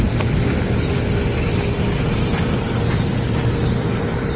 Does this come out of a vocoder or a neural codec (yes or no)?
no